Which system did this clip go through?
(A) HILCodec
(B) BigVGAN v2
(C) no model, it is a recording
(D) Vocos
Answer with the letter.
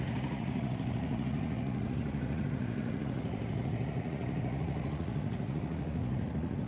D